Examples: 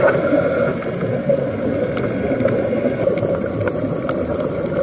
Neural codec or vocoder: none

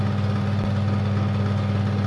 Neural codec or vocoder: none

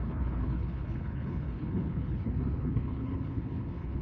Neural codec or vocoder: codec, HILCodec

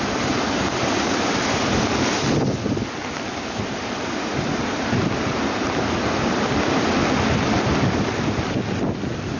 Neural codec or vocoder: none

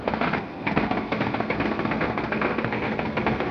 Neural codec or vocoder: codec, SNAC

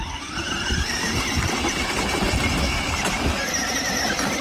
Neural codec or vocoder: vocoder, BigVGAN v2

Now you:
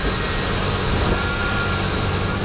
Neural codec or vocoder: none